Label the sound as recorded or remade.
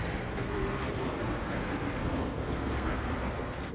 remade